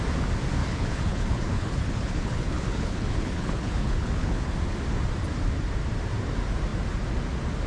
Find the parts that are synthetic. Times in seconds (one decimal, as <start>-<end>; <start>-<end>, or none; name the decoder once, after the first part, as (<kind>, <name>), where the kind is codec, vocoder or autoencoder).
0.6-4.5 (codec, HILCodec)